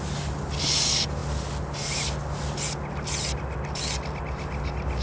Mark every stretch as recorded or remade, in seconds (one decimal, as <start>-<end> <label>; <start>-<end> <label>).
0.0-5.0 recorded

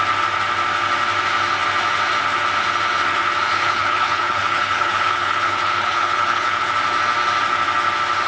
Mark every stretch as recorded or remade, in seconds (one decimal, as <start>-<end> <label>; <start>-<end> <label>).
0.0-3.5 recorded; 3.5-6.7 remade; 6.7-8.3 recorded

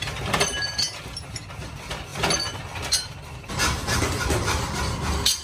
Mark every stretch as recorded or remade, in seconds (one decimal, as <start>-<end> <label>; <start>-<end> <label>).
0.0-2.1 recorded; 2.1-3.1 remade; 3.1-3.8 recorded; 3.8-4.6 remade; 4.6-5.4 recorded